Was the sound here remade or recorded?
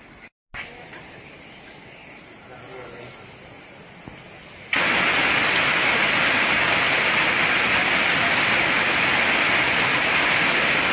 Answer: recorded